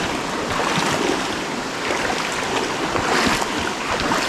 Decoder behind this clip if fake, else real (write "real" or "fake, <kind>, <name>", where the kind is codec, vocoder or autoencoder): real